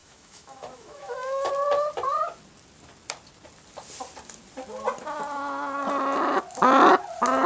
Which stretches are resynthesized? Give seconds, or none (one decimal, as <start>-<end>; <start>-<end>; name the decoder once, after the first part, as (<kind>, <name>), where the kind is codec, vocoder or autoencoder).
0.0-1.5 (autoencoder, DAC-VAE)

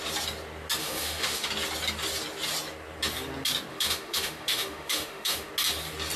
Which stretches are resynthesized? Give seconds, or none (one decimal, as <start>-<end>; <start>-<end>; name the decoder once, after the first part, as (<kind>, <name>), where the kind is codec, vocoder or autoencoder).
0.8-1.5 (autoencoder, DAC-VAE); 3.7-5.5

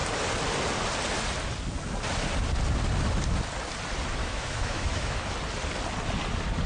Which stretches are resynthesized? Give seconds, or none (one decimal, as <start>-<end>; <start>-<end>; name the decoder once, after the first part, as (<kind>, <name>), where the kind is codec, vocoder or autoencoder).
4.2-5.3 (autoencoder, DAC-VAE)

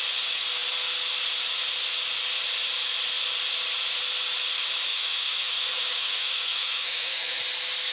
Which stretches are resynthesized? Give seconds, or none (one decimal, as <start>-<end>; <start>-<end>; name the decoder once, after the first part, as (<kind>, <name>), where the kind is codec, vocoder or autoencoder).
4.9-7.4 (autoencoder, DAC-VAE)

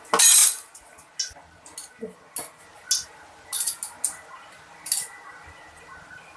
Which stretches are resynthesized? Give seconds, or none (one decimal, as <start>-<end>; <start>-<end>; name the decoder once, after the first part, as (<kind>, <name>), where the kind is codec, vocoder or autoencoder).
none

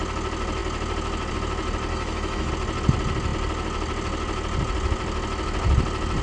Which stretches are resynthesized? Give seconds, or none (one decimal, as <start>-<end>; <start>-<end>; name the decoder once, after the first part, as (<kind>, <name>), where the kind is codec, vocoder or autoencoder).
1.9-2.5 (autoencoder, DAC-VAE)

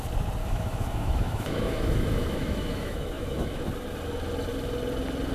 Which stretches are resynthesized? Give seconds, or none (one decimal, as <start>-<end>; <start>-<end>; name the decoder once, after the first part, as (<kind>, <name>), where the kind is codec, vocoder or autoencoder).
0.4-3.6 (autoencoder, DAC-VAE)

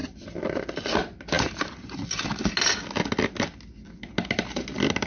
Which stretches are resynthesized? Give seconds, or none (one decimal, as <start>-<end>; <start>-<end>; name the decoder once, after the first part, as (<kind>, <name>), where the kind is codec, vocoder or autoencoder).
none